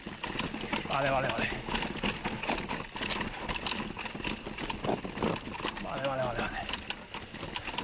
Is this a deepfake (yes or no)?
no